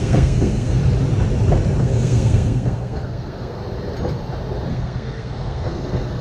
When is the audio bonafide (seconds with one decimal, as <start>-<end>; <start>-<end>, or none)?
0.8-1.8; 3.6-4.7